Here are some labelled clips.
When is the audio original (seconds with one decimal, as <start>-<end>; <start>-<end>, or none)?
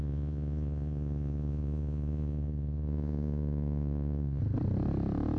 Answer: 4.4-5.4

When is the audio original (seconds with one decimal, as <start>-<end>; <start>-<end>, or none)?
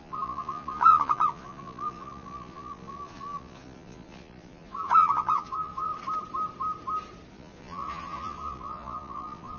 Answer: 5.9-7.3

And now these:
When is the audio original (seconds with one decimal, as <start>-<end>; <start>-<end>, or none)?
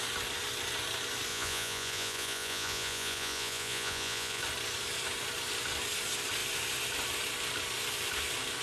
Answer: 0.0-1.3; 4.4-8.6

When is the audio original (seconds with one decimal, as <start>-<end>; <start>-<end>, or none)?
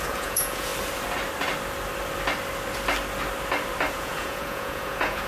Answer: 0.7-3.9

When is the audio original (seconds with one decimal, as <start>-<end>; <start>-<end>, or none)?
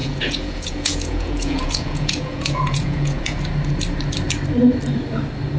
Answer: 3.4-5.6